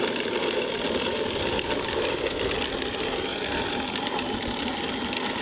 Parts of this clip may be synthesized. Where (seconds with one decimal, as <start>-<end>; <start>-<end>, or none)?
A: none